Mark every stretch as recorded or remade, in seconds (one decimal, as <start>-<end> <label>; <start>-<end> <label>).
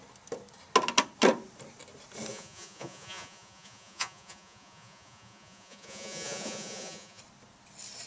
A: 0.0-2.3 recorded; 2.3-7.2 remade; 7.2-8.1 recorded